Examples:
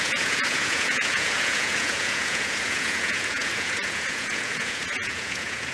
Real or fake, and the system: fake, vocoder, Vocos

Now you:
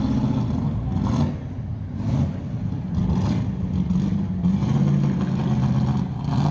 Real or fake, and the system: real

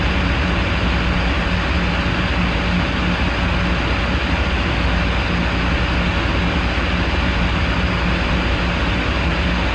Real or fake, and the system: real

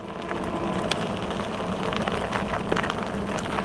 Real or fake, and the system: real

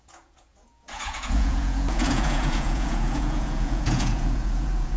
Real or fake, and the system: fake, vocoder, Vocos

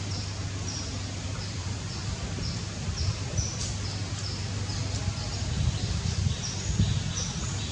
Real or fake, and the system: real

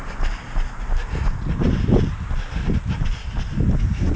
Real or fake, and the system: real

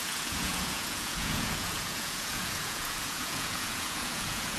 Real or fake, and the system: fake, vocoder, Vocos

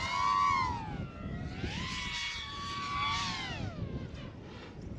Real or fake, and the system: real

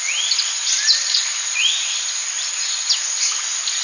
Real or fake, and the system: real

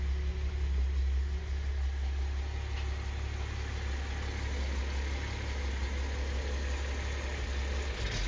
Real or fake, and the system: real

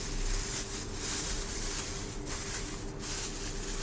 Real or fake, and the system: real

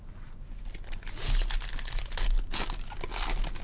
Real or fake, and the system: real